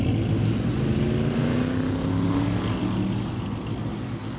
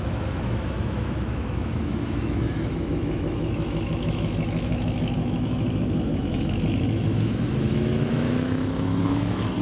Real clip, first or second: first